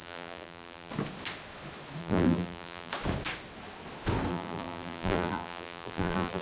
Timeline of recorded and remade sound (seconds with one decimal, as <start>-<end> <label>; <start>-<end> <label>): 0.0-0.9 remade; 0.9-2.0 recorded; 2.0-2.9 remade; 2.9-4.3 recorded; 4.3-6.4 remade